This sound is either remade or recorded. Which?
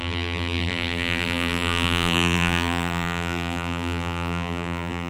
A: remade